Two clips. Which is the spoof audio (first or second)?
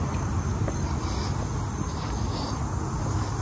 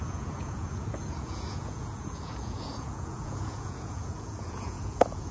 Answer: second